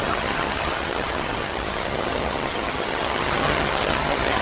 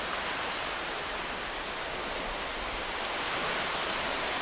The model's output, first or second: first